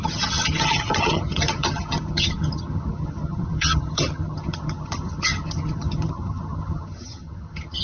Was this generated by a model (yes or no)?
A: yes